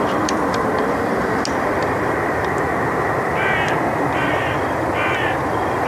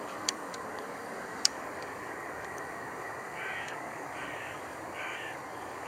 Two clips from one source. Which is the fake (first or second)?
second